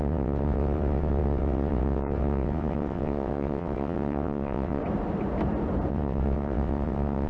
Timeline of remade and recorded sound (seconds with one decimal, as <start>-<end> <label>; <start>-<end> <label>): 0.0-4.8 remade; 4.8-5.9 recorded; 5.9-7.3 remade